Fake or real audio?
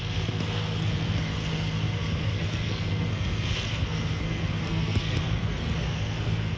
fake